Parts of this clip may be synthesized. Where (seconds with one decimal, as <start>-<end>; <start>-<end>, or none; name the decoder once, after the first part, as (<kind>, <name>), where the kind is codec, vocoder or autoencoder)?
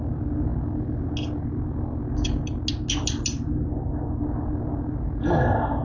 none